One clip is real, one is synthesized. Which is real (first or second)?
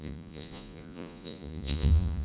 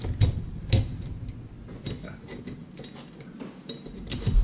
second